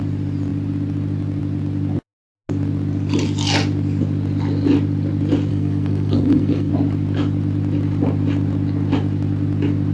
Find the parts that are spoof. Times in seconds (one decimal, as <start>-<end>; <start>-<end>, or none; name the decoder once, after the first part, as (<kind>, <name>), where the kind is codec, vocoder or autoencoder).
5.5-6.7 (codec, SNAC)